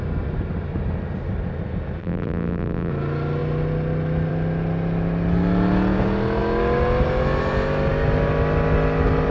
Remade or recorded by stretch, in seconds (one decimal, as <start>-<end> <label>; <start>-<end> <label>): 0.0-2.0 recorded; 2.0-2.9 remade; 2.9-9.3 recorded